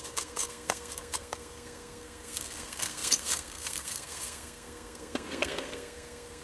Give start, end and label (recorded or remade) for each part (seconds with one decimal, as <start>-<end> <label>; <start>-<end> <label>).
0.0-6.4 remade